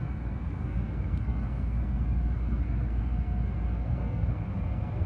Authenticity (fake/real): fake